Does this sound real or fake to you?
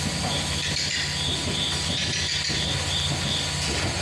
real